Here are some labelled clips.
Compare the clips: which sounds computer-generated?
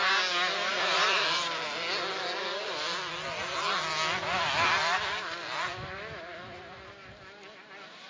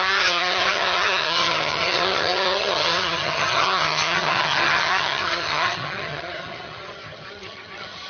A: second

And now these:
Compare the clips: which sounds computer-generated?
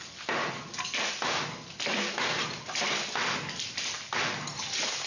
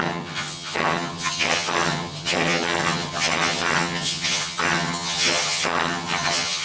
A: second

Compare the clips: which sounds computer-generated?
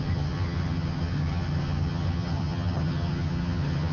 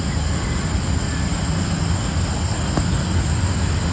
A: first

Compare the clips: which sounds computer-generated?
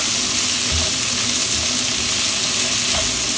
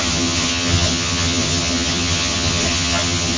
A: second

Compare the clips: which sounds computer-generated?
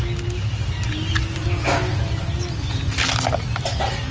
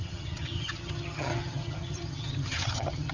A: second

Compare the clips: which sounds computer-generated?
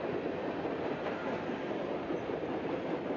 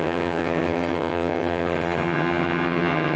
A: second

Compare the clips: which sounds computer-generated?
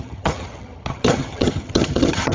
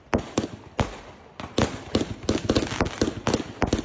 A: first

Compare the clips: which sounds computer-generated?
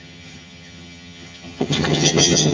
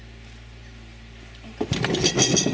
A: first